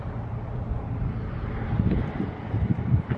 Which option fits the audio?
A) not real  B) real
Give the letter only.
B